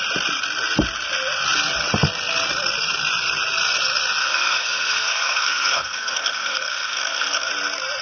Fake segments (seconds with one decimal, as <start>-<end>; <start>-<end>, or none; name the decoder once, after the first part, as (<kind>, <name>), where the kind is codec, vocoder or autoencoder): 4.2-7.5 (codec, SNAC)